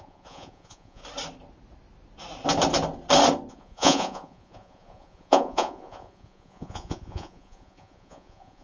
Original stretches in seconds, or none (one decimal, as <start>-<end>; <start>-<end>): 1.0-3.5